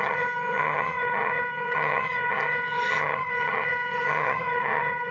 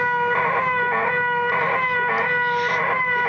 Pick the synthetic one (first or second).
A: first